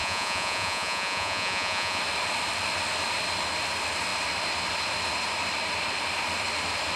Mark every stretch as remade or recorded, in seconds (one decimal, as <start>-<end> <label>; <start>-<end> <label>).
0.0-2.0 remade; 2.0-7.0 recorded